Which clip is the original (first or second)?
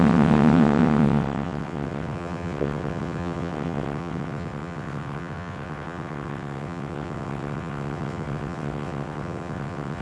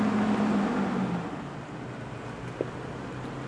second